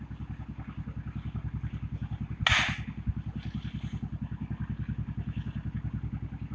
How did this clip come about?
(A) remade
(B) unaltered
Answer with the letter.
B